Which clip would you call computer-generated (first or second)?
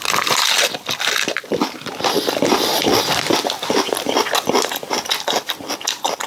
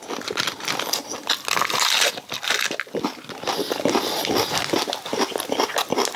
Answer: first